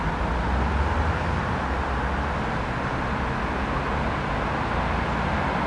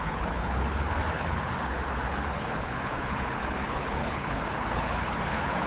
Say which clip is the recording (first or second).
first